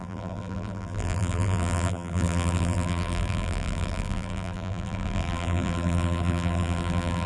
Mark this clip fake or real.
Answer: fake